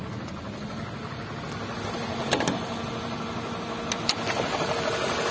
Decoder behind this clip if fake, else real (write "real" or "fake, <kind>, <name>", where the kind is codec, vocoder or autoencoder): real